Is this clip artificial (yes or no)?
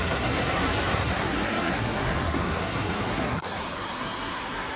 yes